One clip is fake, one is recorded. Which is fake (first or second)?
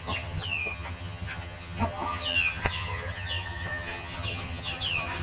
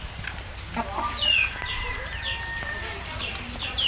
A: first